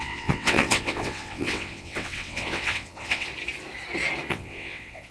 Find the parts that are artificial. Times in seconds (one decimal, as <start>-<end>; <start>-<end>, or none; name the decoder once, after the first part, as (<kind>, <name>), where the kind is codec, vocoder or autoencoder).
0.0-3.3 (vocoder, WaveNeXt); 4.3-5.1

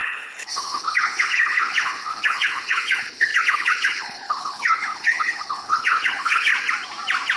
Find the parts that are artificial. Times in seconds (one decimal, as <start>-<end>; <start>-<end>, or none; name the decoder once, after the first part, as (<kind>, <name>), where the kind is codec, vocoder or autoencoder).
0.0-6.5 (codec, HILCodec)